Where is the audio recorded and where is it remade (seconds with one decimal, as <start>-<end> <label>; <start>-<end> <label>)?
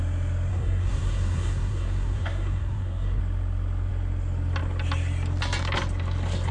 0.0-0.5 recorded; 0.5-3.2 remade; 3.2-6.5 recorded